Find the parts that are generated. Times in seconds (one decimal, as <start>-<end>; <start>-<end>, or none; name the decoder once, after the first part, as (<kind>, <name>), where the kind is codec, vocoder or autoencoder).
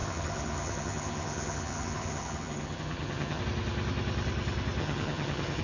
0.0-3.4 (vocoder, HiFi-GAN); 4.8-5.6